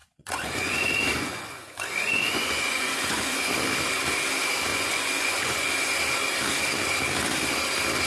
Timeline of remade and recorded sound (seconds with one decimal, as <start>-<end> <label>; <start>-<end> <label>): 0.0-3.5 remade; 3.5-4.7 recorded; 4.7-5.7 remade; 5.7-8.1 recorded